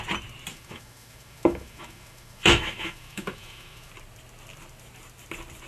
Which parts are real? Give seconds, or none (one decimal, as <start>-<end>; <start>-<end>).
0.0-0.5; 3.9-5.7